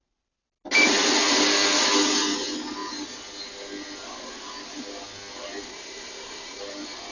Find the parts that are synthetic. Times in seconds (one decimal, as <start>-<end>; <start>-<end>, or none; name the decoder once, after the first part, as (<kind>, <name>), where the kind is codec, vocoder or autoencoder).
5.7-6.6 (codec, SNAC)